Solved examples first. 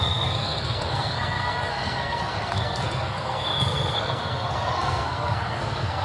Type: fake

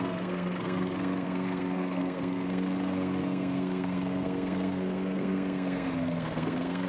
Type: fake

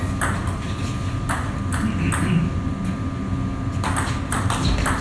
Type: real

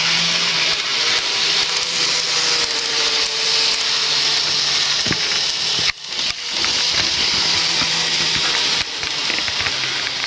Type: real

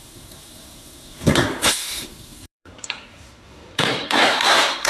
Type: fake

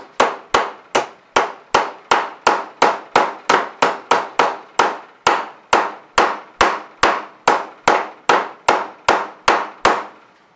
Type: real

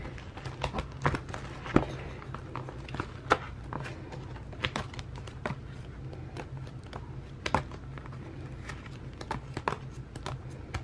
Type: real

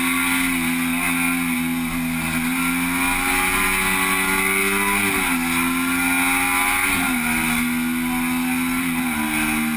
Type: real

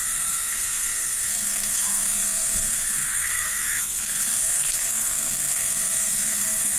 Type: fake